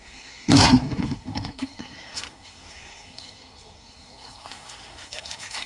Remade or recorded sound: remade